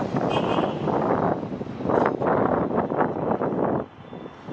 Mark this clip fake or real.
real